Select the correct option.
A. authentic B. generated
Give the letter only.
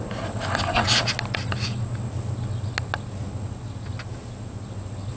A